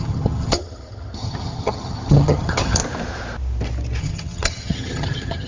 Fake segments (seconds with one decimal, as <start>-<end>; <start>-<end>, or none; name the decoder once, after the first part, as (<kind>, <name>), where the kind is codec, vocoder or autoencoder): 0.0-2.8 (vocoder, HiFi-GAN); 4.0-5.5